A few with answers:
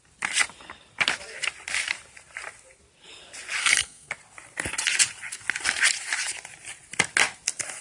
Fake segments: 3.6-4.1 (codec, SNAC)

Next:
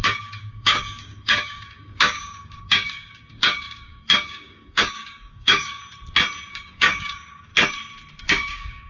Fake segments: 0.0-5.8 (codec, DAC); 6.5-7.5; 8.2-8.9

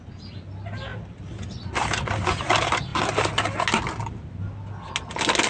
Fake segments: none